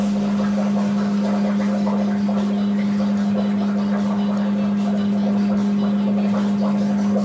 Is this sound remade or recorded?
recorded